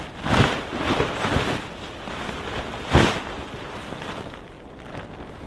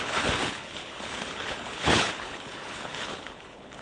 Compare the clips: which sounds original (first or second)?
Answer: first